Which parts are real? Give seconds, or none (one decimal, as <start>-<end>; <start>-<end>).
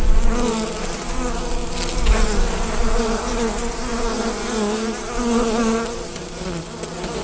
0.0-7.2